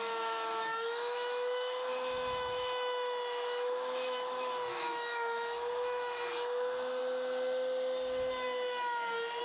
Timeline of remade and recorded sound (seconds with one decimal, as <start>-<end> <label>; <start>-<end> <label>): 0.0-7.0 remade; 7.0-9.4 recorded